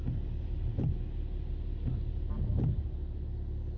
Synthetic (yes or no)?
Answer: no